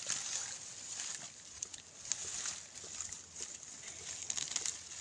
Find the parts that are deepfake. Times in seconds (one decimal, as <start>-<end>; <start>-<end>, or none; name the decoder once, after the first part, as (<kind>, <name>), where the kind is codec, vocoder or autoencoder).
none